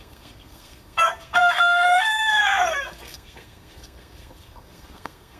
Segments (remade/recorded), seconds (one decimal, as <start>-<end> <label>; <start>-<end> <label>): 0.0-5.4 remade